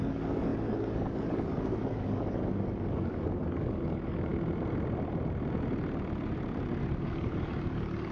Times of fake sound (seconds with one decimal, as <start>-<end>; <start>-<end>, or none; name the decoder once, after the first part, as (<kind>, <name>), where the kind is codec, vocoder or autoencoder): 0.0-4.3 (codec, DAC); 7.0-8.1